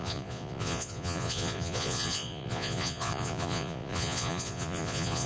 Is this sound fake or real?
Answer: fake